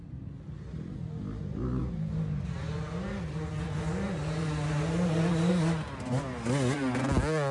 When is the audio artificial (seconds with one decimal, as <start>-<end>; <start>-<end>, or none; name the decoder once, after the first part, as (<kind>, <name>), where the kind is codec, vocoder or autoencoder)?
none